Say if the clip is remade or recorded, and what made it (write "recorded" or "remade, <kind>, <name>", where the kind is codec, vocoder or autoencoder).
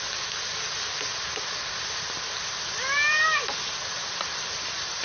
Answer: recorded